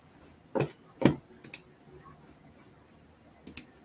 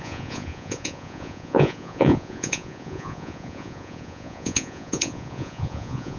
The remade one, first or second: second